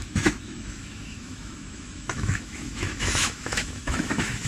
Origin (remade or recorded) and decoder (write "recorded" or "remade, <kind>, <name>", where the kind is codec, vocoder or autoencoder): remade, autoencoder, DAC-VAE